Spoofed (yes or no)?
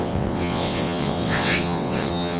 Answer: yes